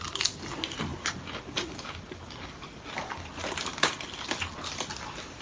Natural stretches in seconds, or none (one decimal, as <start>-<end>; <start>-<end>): 0.0-5.4